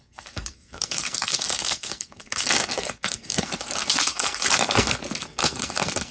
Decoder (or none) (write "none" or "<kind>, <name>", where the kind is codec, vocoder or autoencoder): codec, SNAC